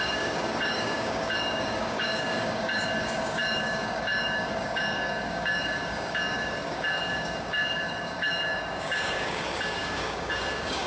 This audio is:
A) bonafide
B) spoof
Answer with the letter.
B